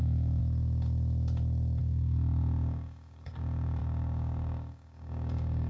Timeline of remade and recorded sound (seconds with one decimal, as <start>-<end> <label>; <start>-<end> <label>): 0.0-0.4 remade; 0.4-1.8 recorded; 1.8-5.7 remade